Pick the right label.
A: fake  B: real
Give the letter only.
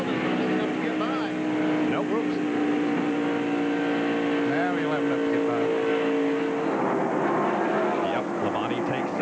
B